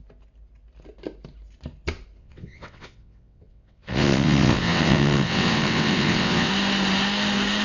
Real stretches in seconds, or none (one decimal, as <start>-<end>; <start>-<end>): 0.0-2.2; 6.5-7.6